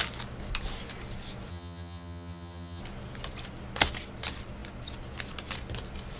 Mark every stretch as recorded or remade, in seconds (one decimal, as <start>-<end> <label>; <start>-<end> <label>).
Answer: 0.0-1.5 recorded; 1.5-2.8 remade; 2.8-6.2 recorded